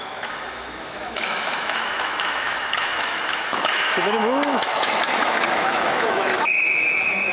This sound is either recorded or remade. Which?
remade